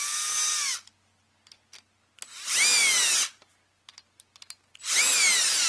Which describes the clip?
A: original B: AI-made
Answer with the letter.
A